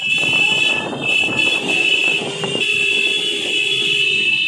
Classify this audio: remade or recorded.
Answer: remade